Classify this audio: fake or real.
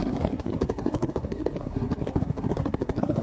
fake